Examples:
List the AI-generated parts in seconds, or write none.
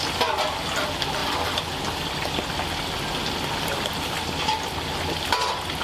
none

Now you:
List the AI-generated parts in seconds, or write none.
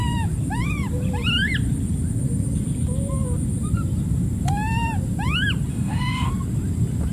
5.7-6.3 (autoencoder, DAC-VAE)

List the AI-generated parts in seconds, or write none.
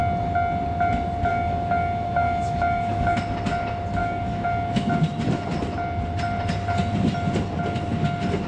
1.3-3.2 (autoencoder, DAC-VAE); 4.0-5.0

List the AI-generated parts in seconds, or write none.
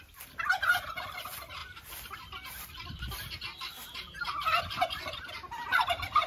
none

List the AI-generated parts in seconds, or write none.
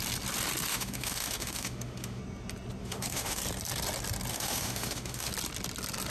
0.7-2.2 (autoencoder, DAC-VAE); 2.8-3.4; 4.3-5.3